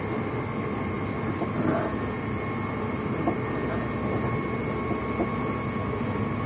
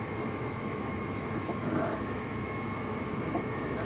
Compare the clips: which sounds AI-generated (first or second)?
second